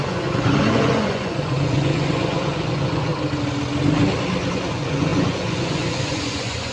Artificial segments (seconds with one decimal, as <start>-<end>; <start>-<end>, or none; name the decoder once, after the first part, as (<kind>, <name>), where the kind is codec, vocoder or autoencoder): 0.0-3.1 (vocoder, Vocos); 4.5-6.7

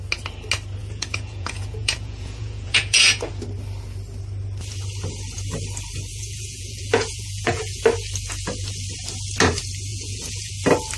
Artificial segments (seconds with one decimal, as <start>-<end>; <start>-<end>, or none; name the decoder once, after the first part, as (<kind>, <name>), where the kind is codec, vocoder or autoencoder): 0.8-3.3 (vocoder, Vocos); 6.1-7.8; 9.9-10.5